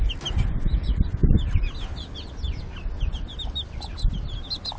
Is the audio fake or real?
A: real